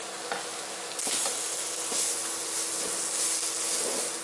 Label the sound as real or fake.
real